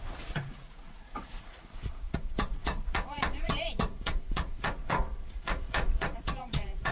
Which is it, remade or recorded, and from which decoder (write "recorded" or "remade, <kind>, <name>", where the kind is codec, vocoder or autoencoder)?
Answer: remade, vocoder, Vocos